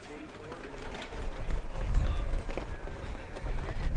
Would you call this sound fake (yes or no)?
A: no